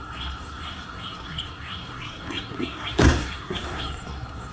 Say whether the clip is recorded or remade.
remade